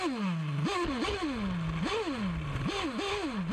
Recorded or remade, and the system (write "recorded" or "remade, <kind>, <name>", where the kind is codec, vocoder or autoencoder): recorded